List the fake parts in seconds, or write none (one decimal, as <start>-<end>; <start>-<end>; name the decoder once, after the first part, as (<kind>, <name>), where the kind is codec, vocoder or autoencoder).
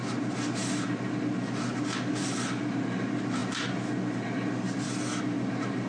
none